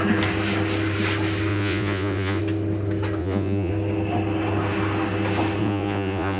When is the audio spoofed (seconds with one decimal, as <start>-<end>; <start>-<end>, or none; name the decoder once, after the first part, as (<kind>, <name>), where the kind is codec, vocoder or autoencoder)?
1.5-2.4 (vocoder, Vocos); 3.2-3.7; 5.6-6.4